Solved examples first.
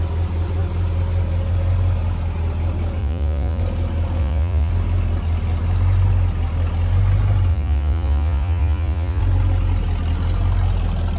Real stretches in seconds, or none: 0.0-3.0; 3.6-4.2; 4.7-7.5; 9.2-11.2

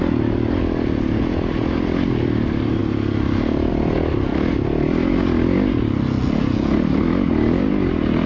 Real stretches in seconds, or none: 0.0-8.3

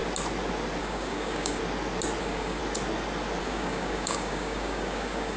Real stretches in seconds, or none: 0.0-0.8; 1.6-2.2; 2.6-3.4

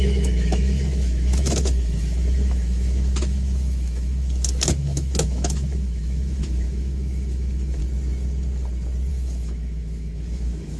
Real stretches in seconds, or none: 7.8-9.1

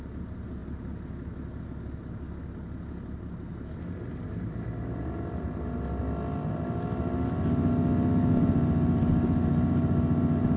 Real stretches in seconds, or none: 0.0-10.6

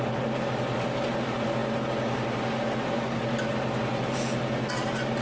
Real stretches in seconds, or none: 0.0-5.2

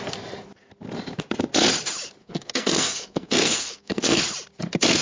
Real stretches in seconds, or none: 0.0-2.2; 4.2-5.0

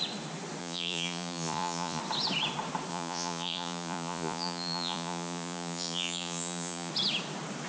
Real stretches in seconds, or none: 0.0-0.6; 2.0-2.9; 6.9-7.7